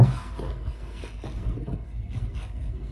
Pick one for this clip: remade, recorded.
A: remade